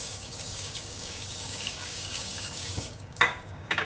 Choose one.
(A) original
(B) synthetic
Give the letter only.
B